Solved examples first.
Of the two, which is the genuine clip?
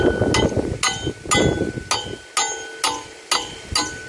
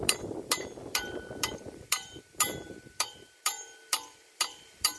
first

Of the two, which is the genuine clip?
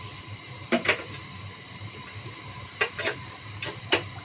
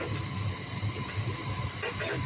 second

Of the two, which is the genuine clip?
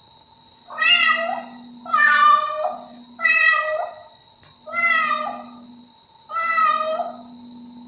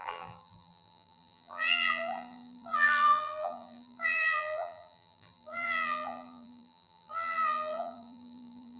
first